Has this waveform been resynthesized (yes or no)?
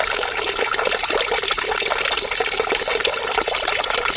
yes